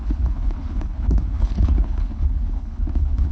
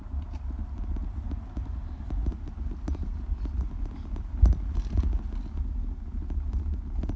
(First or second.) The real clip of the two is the second